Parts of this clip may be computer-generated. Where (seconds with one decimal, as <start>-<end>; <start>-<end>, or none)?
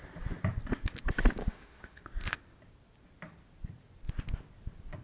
1.4-2.0